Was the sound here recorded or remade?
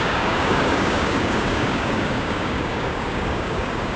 remade